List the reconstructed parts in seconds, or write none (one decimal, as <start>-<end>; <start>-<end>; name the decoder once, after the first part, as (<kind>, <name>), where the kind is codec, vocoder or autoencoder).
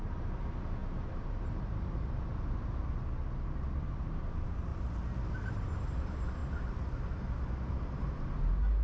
0.0-4.7 (vocoder, BigVGAN v2); 5.3-6.4; 7.7-8.8